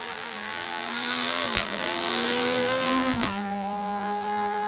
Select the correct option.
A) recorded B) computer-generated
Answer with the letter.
B